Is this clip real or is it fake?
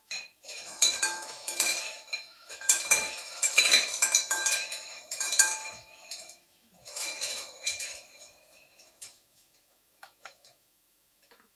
fake